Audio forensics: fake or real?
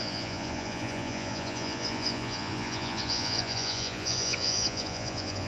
fake